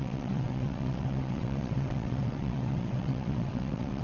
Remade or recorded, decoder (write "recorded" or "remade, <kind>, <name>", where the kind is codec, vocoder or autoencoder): remade, vocoder, WaveNeXt